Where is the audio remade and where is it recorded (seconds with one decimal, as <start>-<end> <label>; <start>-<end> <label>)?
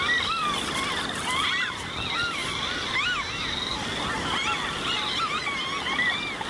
0.0-6.5 recorded